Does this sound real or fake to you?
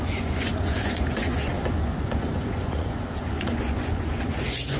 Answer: fake